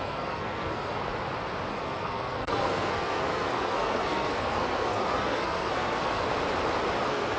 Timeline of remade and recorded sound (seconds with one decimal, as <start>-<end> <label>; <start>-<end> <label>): 0.0-1.0 remade; 1.0-1.7 recorded; 1.7-6.2 remade; 6.2-7.0 recorded; 7.0-7.4 remade

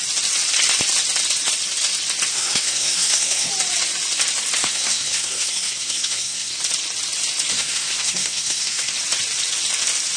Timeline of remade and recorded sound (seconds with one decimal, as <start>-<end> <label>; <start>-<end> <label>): 0.0-2.3 recorded; 2.3-3.5 remade; 3.5-4.6 recorded; 4.6-6.6 remade; 6.6-7.5 recorded; 7.5-8.9 remade; 8.9-10.2 recorded

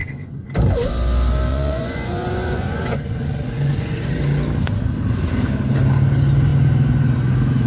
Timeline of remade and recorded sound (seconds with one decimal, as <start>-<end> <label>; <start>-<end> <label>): 0.0-0.5 remade; 0.5-1.5 recorded; 1.5-4.1 remade; 4.1-7.7 recorded

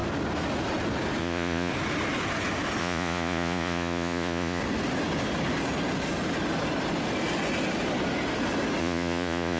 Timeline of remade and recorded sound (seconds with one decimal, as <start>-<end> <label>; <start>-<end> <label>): 0.0-1.2 recorded; 1.2-1.7 remade; 1.7-2.8 recorded; 2.8-4.6 remade; 4.6-8.8 recorded; 8.8-9.6 remade

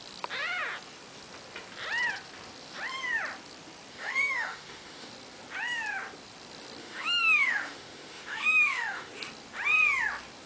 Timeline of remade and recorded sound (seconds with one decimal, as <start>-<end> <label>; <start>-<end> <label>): 0.0-3.9 recorded; 3.9-5.1 remade; 5.1-6.8 recorded; 6.8-9.1 remade; 9.1-10.5 recorded